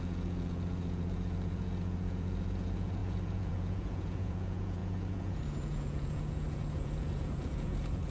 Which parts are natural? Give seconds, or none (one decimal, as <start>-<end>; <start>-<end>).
none